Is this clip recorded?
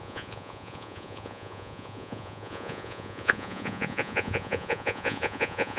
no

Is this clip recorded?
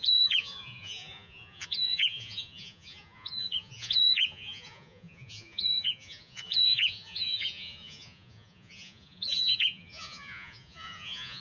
no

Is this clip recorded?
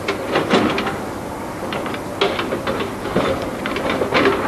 yes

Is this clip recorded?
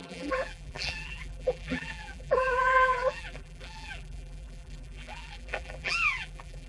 no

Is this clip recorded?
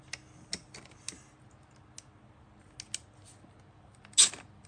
yes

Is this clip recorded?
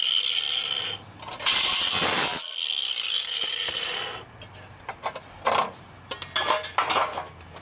yes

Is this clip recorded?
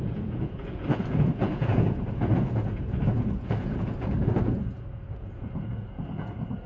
no